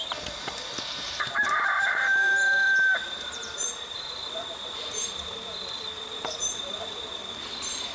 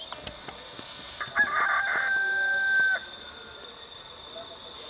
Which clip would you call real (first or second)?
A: second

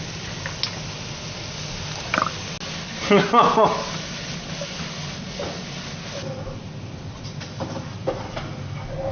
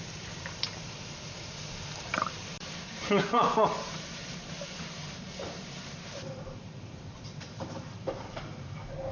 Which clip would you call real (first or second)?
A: first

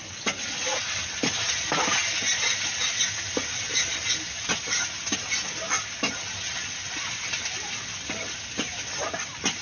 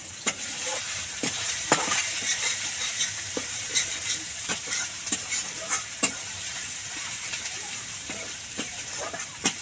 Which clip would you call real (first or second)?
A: first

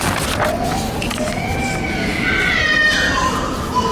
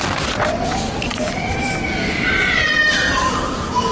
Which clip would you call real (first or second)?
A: first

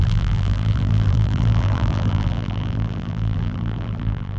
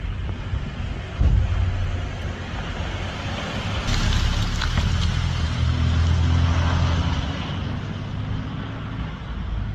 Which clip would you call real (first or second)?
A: second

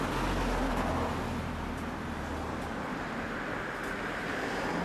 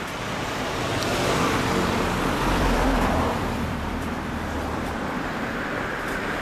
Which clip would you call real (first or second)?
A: first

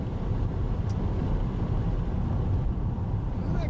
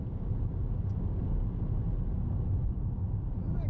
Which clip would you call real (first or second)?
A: second